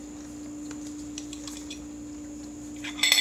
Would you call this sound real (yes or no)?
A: yes